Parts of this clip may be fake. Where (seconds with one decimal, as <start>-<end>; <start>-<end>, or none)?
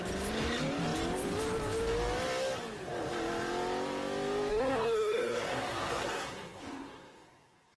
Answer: 4.5-7.8